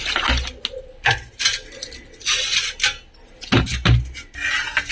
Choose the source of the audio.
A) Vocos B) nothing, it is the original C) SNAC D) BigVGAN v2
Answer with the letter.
B